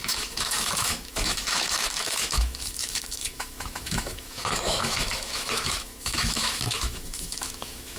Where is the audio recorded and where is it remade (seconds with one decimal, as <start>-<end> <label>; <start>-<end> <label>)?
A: 0.0-8.0 remade